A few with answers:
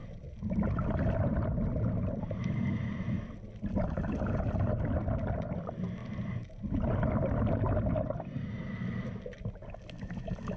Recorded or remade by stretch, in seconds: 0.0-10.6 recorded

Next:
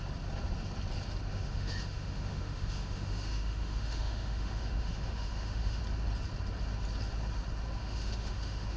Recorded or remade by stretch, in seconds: 0.0-1.3 recorded; 1.3-5.8 remade; 5.8-7.8 recorded; 7.8-8.8 remade

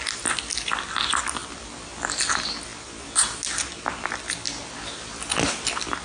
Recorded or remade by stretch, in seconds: 0.0-6.0 recorded